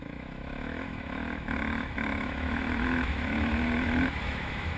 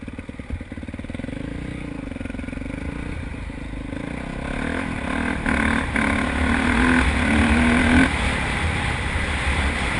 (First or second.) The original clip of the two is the second